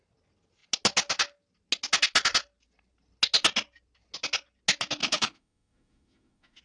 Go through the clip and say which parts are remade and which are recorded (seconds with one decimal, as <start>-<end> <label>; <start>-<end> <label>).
0.0-5.0 recorded; 5.0-6.6 remade

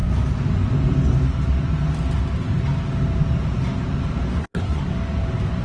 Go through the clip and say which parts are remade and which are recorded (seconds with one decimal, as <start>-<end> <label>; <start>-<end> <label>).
0.0-4.3 recorded; 4.3-4.8 remade; 4.8-5.6 recorded

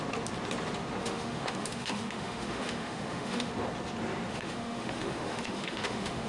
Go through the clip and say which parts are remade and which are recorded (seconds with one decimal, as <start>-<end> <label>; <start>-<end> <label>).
0.0-1.0 recorded; 1.0-3.5 remade; 3.5-4.3 recorded; 4.3-6.3 remade